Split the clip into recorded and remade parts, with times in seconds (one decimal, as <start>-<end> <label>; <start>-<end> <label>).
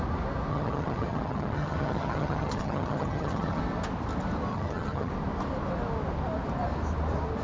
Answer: 0.0-0.5 recorded; 0.5-3.6 remade; 3.6-4.5 recorded; 4.5-5.1 remade; 5.1-7.4 recorded